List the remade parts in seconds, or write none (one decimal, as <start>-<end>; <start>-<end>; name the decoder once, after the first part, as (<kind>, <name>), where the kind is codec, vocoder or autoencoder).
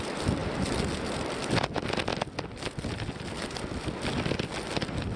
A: none